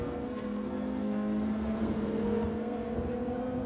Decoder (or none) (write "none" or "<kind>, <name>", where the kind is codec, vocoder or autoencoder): codec, SNAC